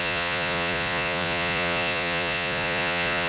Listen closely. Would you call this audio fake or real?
fake